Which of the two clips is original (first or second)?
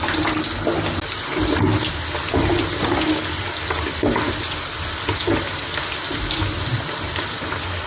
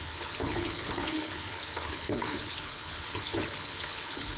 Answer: first